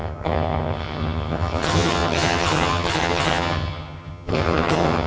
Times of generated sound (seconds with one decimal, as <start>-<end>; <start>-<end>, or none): 0.0-5.1